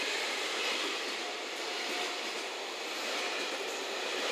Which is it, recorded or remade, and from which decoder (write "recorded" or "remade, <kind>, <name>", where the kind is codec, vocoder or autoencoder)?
recorded